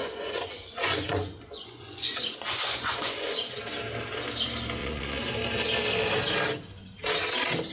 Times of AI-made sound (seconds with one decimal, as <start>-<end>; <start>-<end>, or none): 0.0-3.6; 4.8-5.3